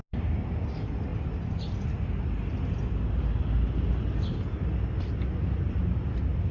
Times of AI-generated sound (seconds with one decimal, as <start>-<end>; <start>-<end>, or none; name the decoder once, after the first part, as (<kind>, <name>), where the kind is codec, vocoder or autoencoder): none